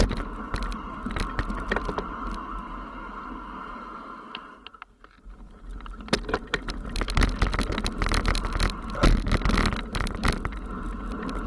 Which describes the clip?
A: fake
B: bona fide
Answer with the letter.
B